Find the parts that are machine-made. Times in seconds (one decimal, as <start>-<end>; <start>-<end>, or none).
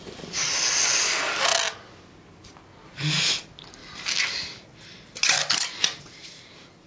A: none